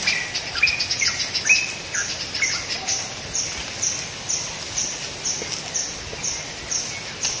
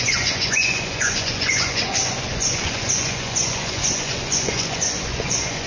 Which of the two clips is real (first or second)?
first